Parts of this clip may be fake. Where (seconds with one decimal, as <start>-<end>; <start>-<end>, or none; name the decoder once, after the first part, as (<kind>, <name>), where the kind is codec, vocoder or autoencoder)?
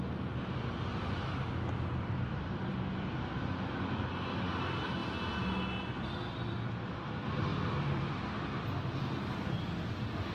0.9-3.6 (vocoder, BigVGAN v2); 7.5-8.2